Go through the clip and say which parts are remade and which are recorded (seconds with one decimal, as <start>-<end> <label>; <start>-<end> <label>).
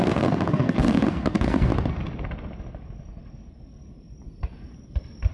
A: 0.0-1.7 remade; 1.7-5.3 recorded